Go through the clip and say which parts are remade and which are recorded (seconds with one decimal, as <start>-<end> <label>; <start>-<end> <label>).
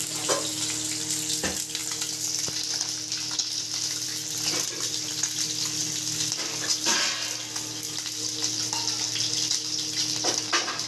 0.0-10.9 recorded